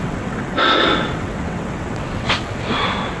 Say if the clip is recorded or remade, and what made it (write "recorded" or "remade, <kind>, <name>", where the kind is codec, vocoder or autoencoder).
remade, vocoder, WaveNeXt